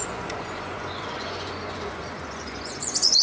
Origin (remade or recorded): remade